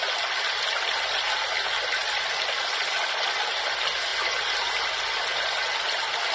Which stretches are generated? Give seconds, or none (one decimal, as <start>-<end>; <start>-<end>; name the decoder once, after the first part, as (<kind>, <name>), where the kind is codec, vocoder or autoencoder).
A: none